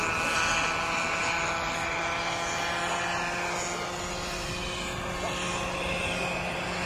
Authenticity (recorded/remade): recorded